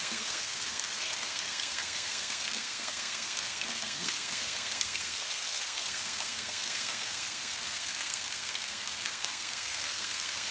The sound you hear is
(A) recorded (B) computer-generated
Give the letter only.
B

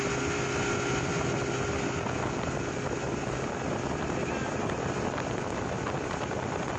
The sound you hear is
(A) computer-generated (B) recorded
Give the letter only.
B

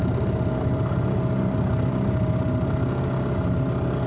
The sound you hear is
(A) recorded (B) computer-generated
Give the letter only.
A